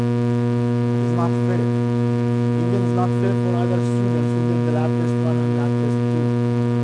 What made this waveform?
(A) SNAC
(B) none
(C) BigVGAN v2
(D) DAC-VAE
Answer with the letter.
B